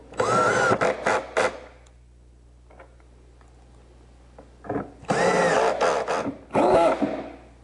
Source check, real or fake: real